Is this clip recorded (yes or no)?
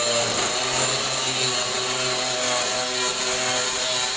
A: yes